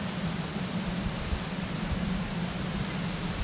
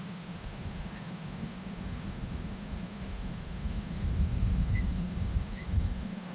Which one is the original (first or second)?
first